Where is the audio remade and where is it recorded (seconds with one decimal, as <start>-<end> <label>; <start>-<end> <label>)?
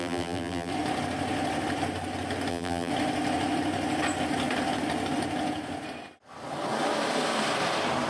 0.0-0.7 remade; 0.7-2.5 recorded; 2.5-2.9 remade; 2.9-8.1 recorded